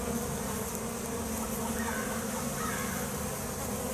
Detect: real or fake real